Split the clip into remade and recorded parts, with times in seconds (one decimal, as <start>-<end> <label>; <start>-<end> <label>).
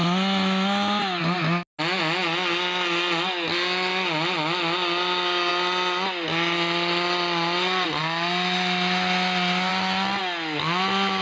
0.0-11.2 recorded